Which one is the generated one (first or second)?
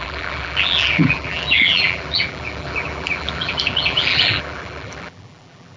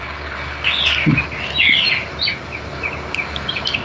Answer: first